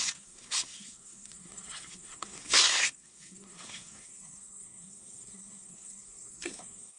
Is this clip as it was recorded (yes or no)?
no